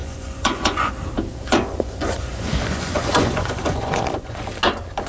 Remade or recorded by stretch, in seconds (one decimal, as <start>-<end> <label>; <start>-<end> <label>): 0.0-0.9 remade; 0.9-1.3 recorded; 1.3-4.4 remade; 4.4-5.1 recorded